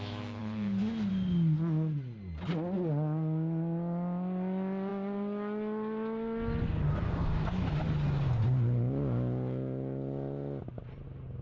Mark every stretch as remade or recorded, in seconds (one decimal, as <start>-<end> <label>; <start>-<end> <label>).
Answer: 0.0-11.4 recorded